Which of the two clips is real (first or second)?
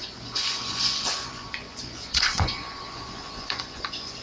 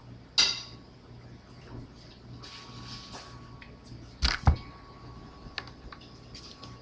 second